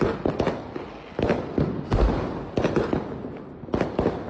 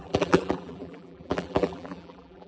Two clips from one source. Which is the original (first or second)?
first